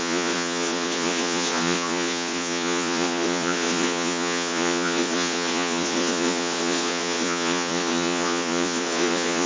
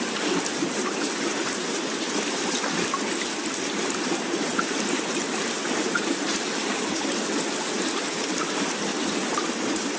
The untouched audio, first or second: second